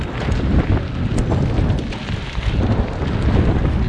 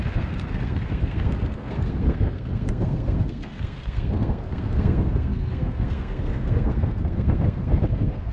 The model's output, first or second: second